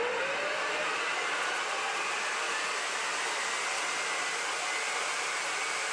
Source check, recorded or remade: recorded